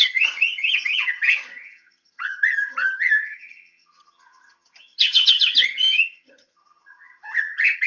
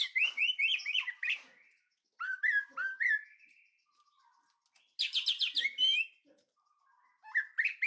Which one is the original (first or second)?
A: second